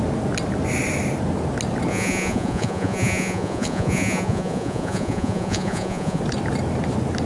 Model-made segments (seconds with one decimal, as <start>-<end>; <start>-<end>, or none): 1.9-6.2